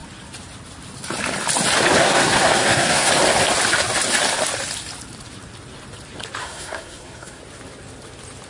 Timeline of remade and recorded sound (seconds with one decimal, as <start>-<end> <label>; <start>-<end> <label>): 0.0-2.0 recorded; 2.0-3.1 remade; 3.1-6.4 recorded; 6.4-7.4 remade; 7.4-8.5 recorded